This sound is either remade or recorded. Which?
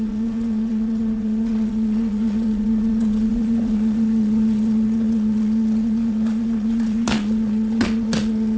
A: remade